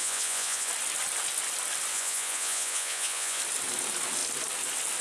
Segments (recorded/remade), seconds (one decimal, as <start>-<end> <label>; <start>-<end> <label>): 0.0-0.7 remade; 0.7-1.9 recorded; 1.9-3.4 remade; 3.4-5.0 recorded